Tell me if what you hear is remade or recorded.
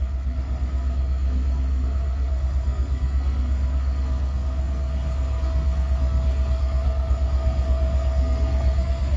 remade